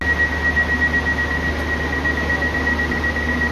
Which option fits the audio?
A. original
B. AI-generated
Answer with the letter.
A